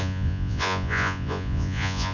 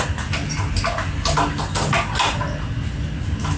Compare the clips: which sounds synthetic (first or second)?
first